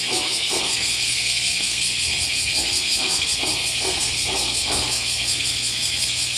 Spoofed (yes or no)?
yes